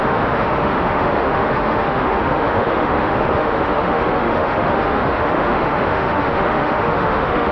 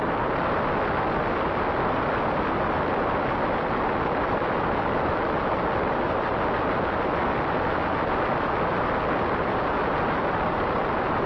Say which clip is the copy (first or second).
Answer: first